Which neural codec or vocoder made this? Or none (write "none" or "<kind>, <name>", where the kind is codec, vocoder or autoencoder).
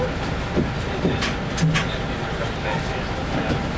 none